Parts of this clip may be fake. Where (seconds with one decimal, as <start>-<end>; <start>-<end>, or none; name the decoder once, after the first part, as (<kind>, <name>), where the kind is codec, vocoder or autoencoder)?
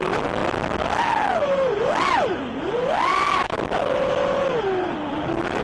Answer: none